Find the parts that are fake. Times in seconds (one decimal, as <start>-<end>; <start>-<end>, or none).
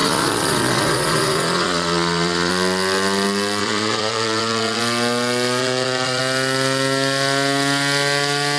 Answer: 0.0-2.5; 3.6-4.8; 5.6-6.2